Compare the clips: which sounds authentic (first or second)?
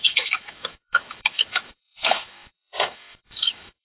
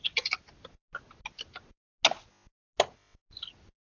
second